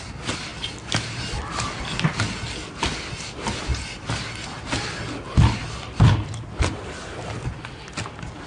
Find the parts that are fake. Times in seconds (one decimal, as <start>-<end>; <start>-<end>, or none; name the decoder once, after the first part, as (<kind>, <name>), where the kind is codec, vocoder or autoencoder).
none